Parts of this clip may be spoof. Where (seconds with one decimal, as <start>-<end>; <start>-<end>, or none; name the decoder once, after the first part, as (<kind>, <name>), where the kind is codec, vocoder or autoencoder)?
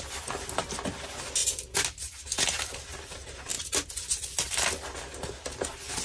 none